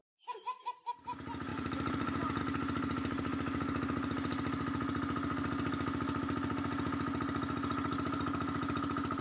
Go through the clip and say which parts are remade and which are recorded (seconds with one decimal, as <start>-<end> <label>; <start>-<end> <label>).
0.0-1.5 recorded; 1.5-2.4 remade; 2.4-9.2 recorded